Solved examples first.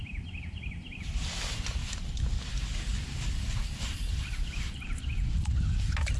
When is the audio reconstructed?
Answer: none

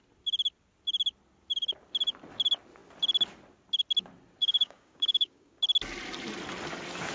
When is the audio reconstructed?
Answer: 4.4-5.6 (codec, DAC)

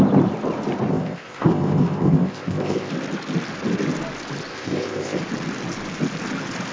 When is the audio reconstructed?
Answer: 0.9-2.9 (codec, ZipCodec); 4.5-5.2